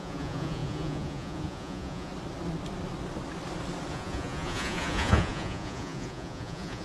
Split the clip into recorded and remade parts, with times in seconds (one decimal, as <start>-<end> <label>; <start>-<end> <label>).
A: 0.0-2.1 remade; 2.1-3.9 recorded; 3.9-6.8 remade